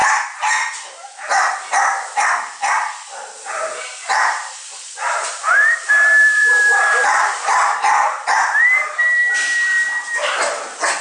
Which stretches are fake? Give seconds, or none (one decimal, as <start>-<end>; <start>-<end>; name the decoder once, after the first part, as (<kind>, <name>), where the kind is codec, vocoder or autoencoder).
3.7-8.6 (vocoder, BigVGAN v2)